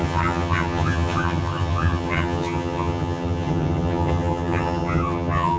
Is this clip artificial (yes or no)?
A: yes